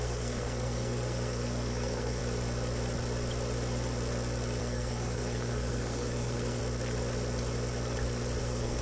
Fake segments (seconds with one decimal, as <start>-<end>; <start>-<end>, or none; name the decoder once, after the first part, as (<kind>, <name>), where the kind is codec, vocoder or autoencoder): 0.0-2.2 (codec, SNAC); 4.6-6.6; 8.4-8.8